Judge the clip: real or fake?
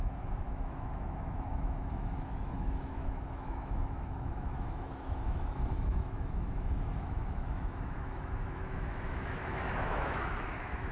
fake